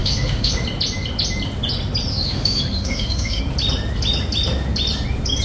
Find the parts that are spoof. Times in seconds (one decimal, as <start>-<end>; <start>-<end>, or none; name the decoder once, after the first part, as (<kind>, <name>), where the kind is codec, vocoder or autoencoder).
0.0-0.5 (autoencoder, DAC-VAE); 2.1-3.4